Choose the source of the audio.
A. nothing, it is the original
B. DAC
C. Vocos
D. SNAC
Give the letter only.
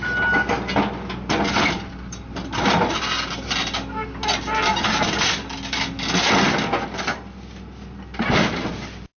A